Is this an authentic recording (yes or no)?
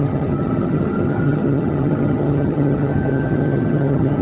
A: no